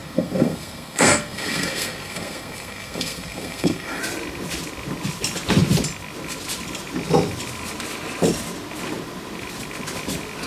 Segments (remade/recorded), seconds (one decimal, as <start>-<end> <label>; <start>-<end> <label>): 0.0-4.0 remade; 4.0-10.5 recorded